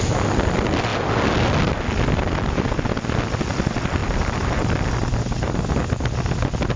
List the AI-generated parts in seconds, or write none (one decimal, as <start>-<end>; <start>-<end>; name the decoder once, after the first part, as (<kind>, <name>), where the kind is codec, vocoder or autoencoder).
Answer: none